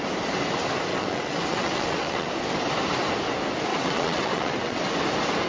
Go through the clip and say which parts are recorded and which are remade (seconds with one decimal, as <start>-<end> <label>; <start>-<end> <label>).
0.0-0.9 recorded; 0.9-2.3 remade; 2.3-3.7 recorded; 3.7-4.8 remade; 4.8-5.5 recorded